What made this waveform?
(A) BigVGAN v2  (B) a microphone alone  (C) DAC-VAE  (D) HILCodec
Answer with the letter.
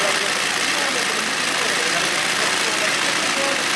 B